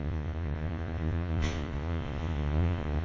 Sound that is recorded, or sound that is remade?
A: remade